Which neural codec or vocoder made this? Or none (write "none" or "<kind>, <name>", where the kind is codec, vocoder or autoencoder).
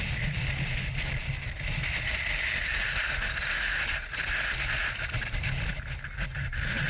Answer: none